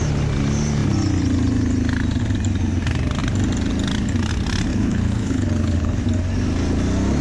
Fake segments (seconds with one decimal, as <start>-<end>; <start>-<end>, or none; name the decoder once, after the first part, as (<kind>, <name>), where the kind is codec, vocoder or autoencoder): 4.7-6.0 (codec, HILCodec)